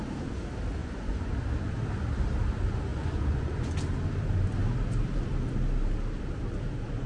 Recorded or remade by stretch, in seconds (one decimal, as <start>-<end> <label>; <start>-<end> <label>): 0.0-0.8 recorded; 0.8-1.3 remade; 1.3-2.9 recorded; 2.9-3.7 remade; 3.7-7.1 recorded